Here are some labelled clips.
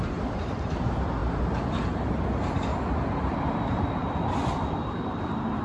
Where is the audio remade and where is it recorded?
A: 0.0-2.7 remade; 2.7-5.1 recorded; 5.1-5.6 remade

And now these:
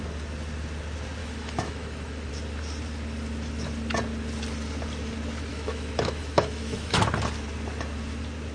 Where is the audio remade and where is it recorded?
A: 0.0-1.2 recorded; 1.2-2.3 remade; 2.3-5.5 recorded; 5.5-7.0 remade; 7.0-8.5 recorded